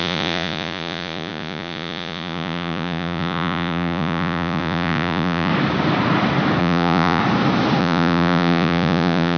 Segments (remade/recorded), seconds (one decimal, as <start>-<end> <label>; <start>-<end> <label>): 0.0-5.5 remade; 5.5-6.6 recorded; 6.6-7.2 remade; 7.2-7.8 recorded; 7.8-9.4 remade